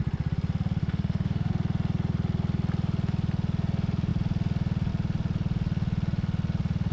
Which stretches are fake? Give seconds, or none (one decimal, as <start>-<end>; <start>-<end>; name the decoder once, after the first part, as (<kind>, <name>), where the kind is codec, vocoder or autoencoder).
0.8-1.5 (autoencoder, DAC-VAE)